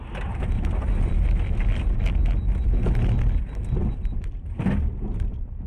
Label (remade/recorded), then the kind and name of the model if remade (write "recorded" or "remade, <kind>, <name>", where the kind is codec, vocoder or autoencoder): recorded